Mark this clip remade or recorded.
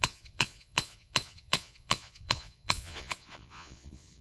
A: remade